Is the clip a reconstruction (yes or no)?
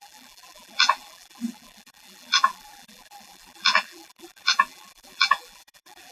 yes